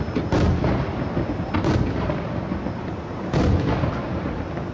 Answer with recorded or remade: recorded